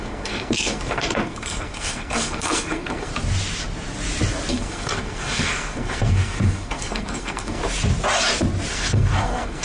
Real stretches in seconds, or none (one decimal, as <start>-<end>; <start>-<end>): 3.1-4.5; 7.6-8.7